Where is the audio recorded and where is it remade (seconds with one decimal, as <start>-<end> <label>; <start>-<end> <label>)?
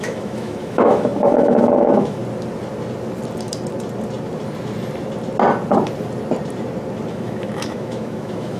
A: 0.0-2.2 remade; 2.2-7.1 recorded; 7.1-8.6 remade